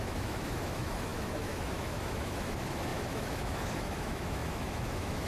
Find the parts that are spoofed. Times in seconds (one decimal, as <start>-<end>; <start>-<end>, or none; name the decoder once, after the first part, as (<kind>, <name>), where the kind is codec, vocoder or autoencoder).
0.0-5.3 (autoencoder, DAC-VAE)